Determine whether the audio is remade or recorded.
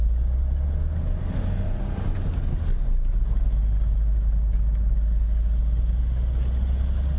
recorded